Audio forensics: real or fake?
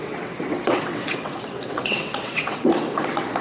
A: fake